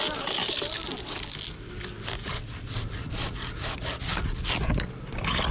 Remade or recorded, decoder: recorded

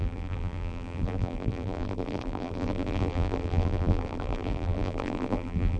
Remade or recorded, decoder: remade, vocoder, BigVGAN v2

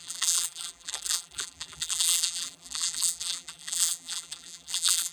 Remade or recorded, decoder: remade, vocoder, BigVGAN v2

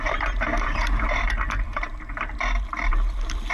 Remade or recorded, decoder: remade, vocoder, BigVGAN v2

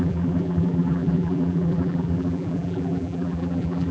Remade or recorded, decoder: remade, vocoder, BigVGAN v2